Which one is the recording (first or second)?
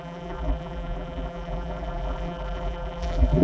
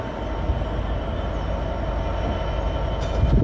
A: second